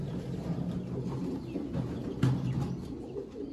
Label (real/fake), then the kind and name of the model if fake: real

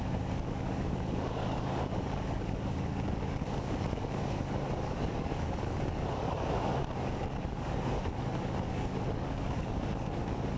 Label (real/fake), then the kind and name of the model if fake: fake, codec, DAC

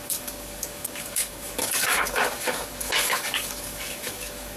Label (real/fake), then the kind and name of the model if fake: fake, codec, DAC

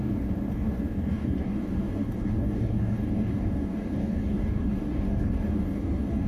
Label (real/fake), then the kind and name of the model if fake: fake, codec, DAC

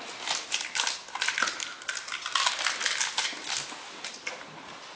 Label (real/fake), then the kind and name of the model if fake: real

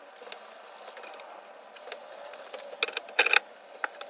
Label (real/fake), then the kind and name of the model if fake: real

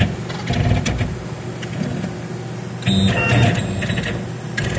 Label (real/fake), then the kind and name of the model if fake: real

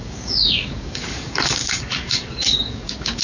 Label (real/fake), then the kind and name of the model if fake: fake, codec, DAC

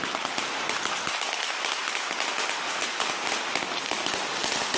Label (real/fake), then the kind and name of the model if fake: real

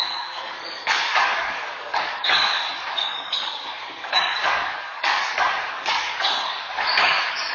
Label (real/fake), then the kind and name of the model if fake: fake, codec, DAC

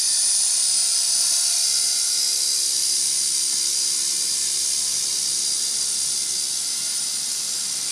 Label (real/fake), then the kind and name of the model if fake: real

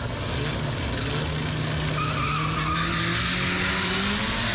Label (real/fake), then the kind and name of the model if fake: real